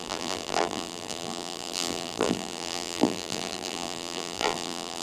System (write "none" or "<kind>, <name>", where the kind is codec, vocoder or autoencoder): vocoder, BigVGAN v2